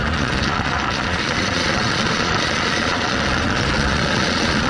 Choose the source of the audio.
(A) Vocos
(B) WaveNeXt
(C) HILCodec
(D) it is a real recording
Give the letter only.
A